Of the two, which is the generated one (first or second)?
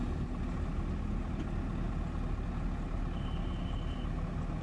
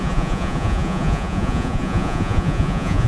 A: second